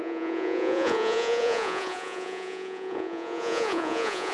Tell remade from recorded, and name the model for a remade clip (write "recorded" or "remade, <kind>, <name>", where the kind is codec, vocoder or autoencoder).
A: remade, vocoder, Vocos